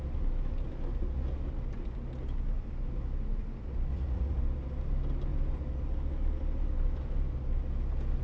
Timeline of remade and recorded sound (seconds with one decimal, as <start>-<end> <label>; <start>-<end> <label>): 0.0-3.9 recorded; 3.9-4.4 remade; 4.4-8.2 recorded